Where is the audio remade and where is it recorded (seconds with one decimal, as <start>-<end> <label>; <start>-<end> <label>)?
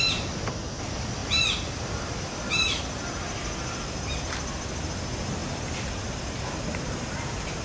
0.0-1.2 recorded; 1.2-2.4 remade; 2.4-5.4 recorded; 5.4-6.6 remade; 6.6-7.6 recorded